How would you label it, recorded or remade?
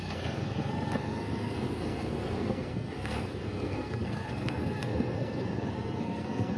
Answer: remade